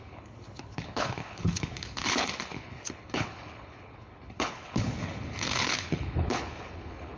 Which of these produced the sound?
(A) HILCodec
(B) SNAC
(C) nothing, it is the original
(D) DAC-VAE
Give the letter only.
A